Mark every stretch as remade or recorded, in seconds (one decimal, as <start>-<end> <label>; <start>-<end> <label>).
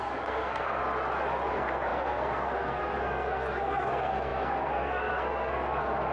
0.0-0.8 remade; 0.8-1.5 recorded; 1.5-6.1 remade